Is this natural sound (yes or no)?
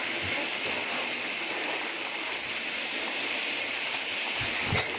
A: yes